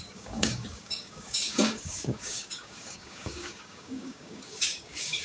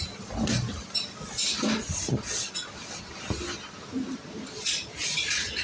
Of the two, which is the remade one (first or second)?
first